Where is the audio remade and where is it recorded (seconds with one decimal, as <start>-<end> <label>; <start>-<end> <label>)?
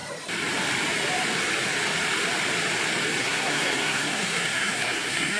0.0-3.2 recorded; 3.2-5.4 remade